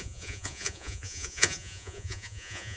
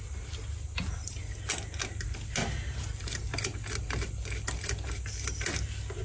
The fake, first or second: first